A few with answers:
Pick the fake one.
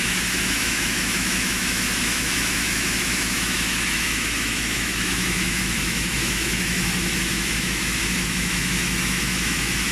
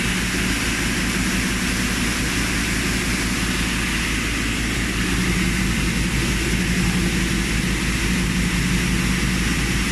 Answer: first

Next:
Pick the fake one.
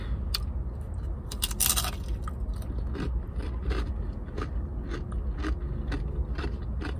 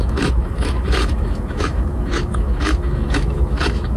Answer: second